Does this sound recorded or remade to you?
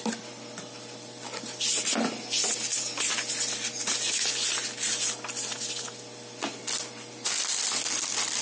recorded